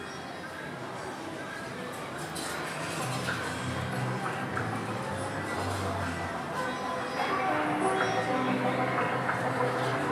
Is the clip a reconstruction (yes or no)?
no